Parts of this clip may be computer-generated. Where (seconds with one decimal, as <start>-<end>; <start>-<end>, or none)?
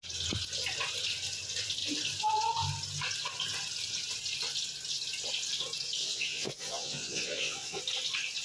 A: 6.0-7.8